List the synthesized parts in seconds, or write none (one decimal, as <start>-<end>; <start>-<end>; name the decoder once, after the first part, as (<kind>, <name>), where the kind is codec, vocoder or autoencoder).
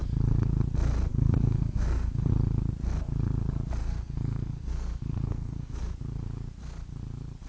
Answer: 1.1-2.3 (codec, SNAC); 3.8-5.9